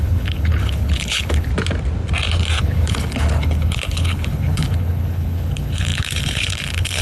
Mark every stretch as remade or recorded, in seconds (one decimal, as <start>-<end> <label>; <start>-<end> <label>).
0.0-1.5 remade; 1.5-2.6 recorded; 2.6-7.0 remade

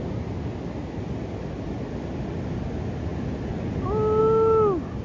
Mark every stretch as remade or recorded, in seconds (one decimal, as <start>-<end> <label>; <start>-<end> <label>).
0.0-5.0 recorded